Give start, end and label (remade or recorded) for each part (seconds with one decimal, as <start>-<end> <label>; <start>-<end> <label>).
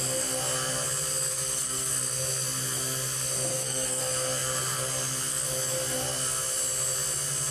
0.0-1.3 recorded; 1.3-1.9 remade; 1.9-3.5 recorded; 3.5-4.0 remade; 4.0-7.5 recorded